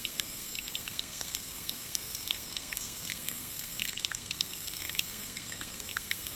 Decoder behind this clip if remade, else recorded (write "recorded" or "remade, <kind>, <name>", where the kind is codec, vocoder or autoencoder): remade, codec, SNAC